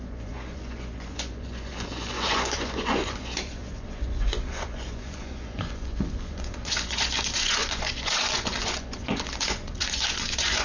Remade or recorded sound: remade